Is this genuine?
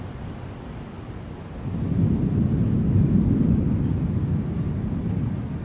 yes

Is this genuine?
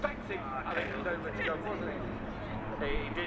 yes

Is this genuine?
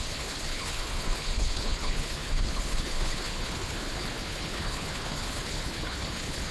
no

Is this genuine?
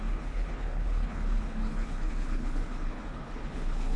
no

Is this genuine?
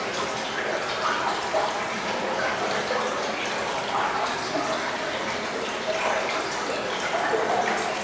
yes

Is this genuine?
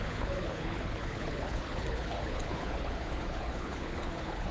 no